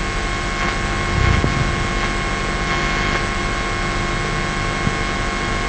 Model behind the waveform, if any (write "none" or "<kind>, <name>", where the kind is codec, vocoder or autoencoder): none